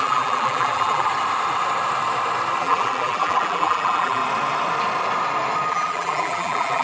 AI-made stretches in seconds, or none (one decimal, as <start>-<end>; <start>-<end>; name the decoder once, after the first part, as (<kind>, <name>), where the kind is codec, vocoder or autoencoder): 0.0-1.1 (vocoder, BigVGAN v2); 2.6-4.2; 5.7-6.8